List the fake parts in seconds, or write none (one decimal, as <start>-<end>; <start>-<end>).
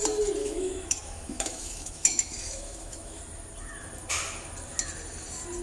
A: 0.4-3.2